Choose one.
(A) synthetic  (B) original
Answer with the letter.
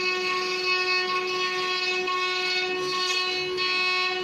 B